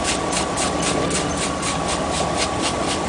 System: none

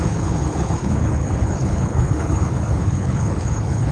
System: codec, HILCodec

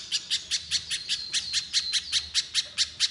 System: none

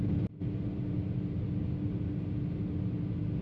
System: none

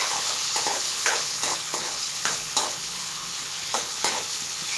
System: codec, HILCodec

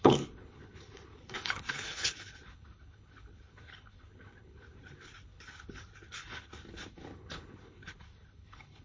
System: codec, HILCodec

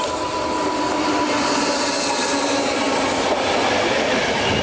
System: none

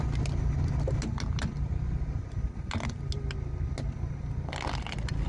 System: none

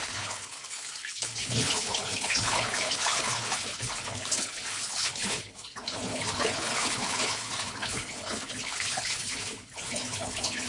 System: codec, HILCodec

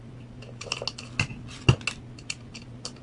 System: none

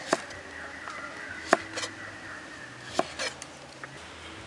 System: none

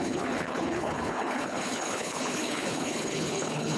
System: codec, HILCodec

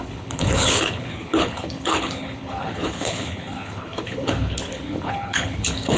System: codec, HILCodec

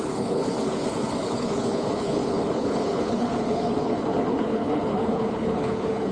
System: codec, HILCodec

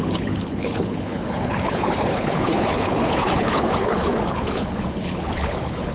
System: codec, HILCodec